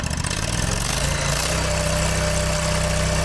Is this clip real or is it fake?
real